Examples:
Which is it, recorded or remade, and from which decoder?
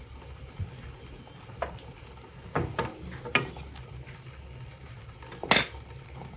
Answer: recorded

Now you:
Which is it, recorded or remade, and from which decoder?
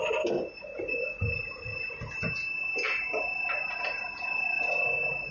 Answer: recorded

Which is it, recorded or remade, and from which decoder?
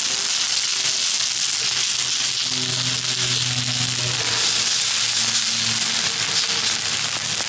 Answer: recorded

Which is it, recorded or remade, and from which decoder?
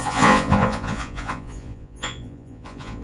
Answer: remade, vocoder, Vocos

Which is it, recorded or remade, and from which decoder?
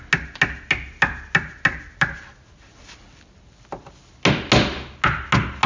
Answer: recorded